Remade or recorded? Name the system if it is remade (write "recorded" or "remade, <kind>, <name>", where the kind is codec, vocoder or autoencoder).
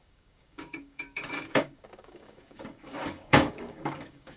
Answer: remade, codec, DAC